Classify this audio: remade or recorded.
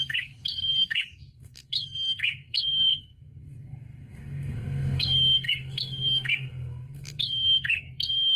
remade